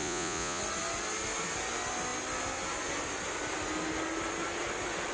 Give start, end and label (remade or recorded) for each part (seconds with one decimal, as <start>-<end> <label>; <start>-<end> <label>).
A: 0.0-0.6 remade; 0.6-5.1 recorded